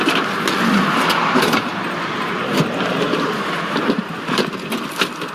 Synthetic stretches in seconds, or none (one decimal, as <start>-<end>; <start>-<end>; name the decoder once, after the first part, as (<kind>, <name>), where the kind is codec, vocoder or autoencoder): 1.2-4.0 (vocoder, BigVGAN v2)